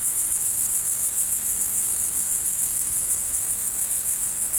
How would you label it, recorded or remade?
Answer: remade